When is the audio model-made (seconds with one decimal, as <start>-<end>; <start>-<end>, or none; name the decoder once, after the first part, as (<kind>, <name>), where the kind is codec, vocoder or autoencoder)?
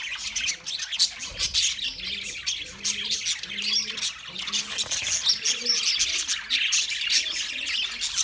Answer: none